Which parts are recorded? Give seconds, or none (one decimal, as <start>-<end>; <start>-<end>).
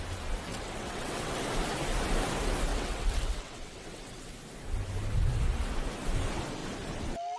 0.0-0.5; 1.4-2.7; 4.3-7.4